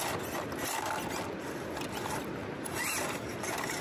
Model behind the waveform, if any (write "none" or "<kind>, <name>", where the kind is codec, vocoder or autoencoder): none